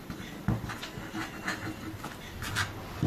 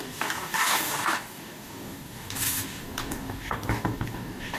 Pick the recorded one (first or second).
first